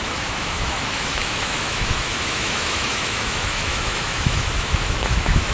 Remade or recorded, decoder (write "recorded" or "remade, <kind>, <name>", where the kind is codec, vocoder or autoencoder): remade, autoencoder, DAC-VAE